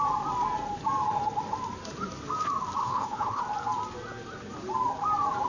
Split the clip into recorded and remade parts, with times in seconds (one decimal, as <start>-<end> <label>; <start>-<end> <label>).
0.0-2.8 recorded; 2.8-3.4 remade; 3.4-5.5 recorded

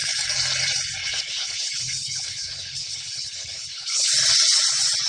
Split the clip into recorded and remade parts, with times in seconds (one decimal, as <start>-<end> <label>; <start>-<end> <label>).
0.0-1.0 recorded; 1.0-4.1 remade; 4.1-5.1 recorded

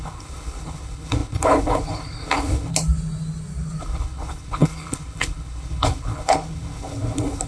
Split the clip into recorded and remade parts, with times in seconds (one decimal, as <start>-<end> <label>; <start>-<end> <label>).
0.0-2.7 remade; 2.7-3.8 recorded; 3.8-7.5 remade